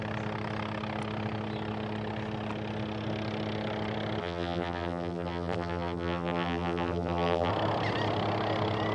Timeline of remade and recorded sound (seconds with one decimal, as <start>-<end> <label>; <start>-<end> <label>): 0.0-4.2 recorded; 4.2-7.5 remade; 7.5-8.9 recorded